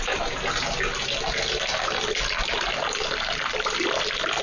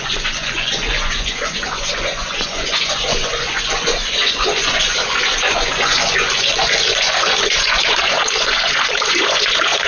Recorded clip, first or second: first